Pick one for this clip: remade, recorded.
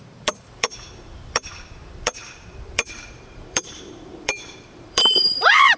remade